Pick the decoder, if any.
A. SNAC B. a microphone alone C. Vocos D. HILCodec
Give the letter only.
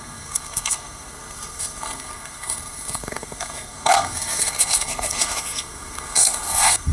A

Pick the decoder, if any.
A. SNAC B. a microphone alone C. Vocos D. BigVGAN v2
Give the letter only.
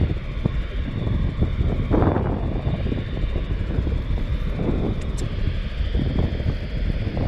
B